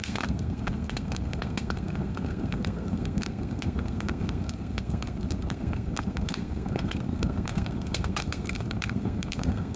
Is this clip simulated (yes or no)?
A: yes